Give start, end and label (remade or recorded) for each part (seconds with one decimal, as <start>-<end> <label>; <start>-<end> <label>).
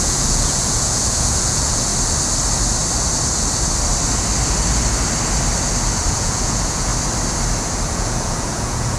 0.0-1.9 remade; 1.9-6.1 recorded; 6.1-6.9 remade; 6.9-7.9 recorded; 7.9-9.0 remade